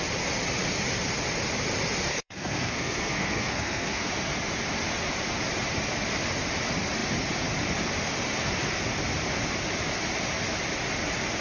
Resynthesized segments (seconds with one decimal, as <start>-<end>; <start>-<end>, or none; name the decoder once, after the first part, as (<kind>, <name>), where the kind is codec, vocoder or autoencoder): 2.1-4.1 (codec, SNAC)